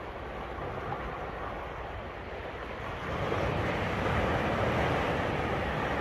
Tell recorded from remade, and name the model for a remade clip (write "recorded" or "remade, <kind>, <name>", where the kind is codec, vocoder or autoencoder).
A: recorded